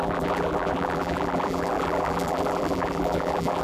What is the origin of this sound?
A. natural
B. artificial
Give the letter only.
B